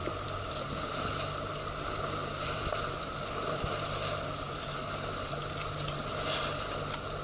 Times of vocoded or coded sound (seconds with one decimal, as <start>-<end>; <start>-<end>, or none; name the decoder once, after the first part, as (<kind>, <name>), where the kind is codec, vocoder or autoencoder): 0.0-1.0 (vocoder, BigVGAN v2); 2.2-3.0